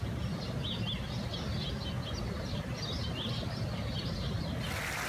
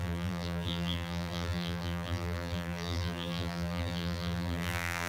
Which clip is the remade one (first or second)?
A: second